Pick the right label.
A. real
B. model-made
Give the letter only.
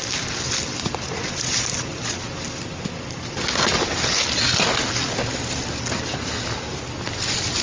A